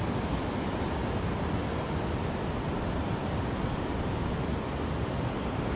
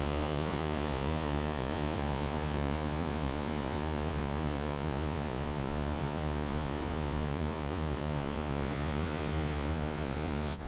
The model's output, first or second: second